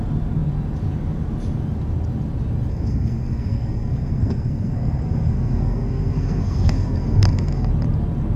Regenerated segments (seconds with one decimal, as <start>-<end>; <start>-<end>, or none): 2.7-7.7